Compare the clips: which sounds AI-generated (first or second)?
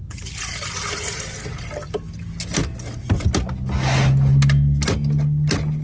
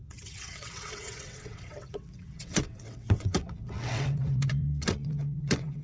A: second